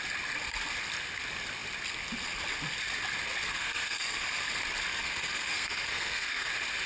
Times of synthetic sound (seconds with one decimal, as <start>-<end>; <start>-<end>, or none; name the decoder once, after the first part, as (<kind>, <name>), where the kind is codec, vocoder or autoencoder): 3.5-4.2 (codec, SNAC); 4.9-6.5